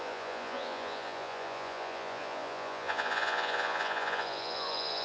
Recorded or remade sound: remade